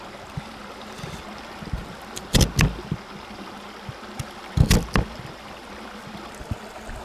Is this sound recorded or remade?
recorded